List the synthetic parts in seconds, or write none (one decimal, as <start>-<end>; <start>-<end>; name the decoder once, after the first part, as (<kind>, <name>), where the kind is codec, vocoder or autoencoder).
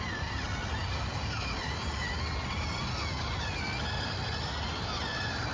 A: none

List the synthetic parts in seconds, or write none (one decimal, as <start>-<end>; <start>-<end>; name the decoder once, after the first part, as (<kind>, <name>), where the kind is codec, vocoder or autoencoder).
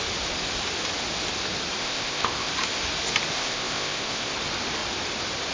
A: 1.8-2.5 (codec, ZipCodec); 3.3-4.3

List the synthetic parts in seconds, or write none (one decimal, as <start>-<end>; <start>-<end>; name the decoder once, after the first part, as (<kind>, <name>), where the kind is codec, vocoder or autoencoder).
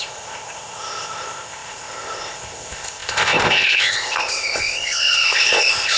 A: 0.0-6.0 (codec, ZipCodec)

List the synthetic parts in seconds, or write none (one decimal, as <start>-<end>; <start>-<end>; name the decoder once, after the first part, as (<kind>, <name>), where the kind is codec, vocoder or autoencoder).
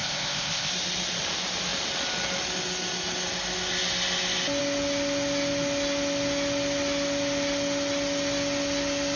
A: 0.0-0.7 (codec, ZipCodec)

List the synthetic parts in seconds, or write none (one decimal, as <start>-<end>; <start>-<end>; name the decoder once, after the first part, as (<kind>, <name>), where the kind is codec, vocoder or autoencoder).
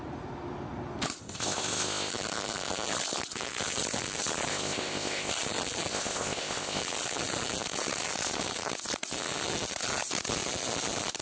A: 1.2-2.1 (codec, ZipCodec); 4.5-5.3; 5.9-6.8